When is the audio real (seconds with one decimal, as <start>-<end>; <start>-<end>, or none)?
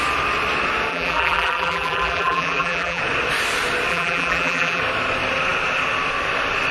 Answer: 0.0-0.9; 3.0-3.9; 4.8-6.7